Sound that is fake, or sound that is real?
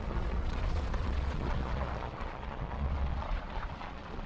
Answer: fake